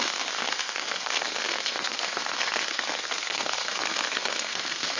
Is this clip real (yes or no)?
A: no